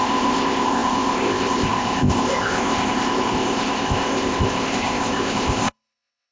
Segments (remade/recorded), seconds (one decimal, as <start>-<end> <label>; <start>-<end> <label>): 0.0-6.3 remade